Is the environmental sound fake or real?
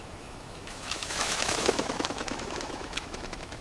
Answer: fake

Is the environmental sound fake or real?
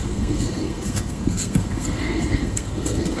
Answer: fake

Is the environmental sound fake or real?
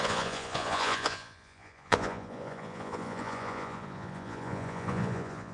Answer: fake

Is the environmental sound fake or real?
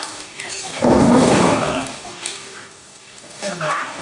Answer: fake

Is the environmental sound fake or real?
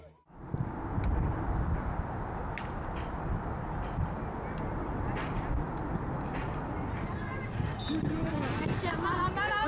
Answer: real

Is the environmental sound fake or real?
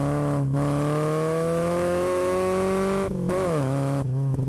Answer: fake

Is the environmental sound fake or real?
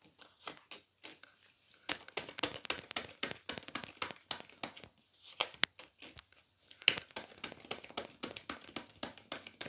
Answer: real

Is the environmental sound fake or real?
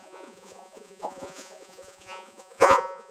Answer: fake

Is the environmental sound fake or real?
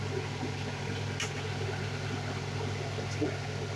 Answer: real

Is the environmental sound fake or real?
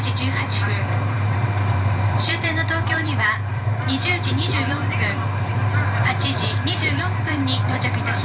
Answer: fake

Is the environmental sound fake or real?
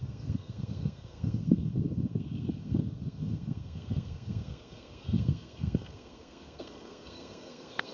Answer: fake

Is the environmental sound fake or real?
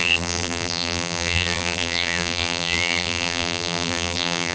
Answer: fake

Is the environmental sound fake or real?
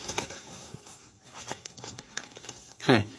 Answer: fake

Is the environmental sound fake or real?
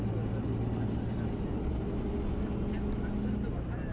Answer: real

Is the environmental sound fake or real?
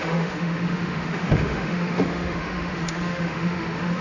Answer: fake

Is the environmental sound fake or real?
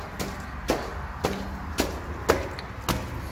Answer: real